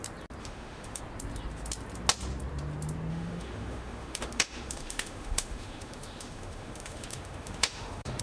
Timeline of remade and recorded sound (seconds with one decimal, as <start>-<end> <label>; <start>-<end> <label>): 0.0-0.4 recorded; 0.4-1.0 remade; 1.0-3.1 recorded; 3.1-8.2 remade

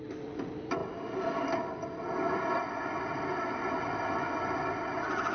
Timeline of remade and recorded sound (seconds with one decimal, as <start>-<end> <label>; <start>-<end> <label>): 0.0-5.3 recorded

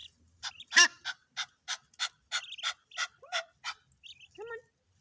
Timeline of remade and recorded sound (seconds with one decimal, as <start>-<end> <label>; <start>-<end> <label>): 0.0-0.5 remade; 0.5-5.0 recorded

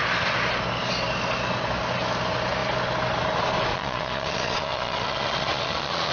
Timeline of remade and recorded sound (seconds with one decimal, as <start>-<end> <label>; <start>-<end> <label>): 0.0-3.7 recorded; 3.7-6.1 remade

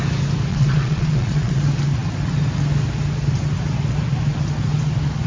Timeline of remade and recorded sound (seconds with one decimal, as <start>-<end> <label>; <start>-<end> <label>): 0.0-0.5 recorded; 0.5-1.6 remade; 1.6-5.3 recorded

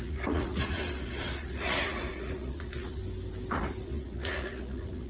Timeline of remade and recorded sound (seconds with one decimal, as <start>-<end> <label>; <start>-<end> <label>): 0.0-3.0 remade; 3.0-3.5 recorded; 3.5-5.1 remade